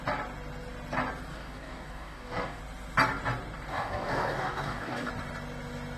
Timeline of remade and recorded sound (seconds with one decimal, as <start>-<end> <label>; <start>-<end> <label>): 0.0-1.3 recorded; 1.3-2.6 remade; 2.6-3.7 recorded; 3.7-5.1 remade; 5.1-6.0 recorded